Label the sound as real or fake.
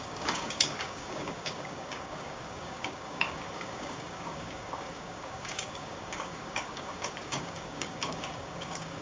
fake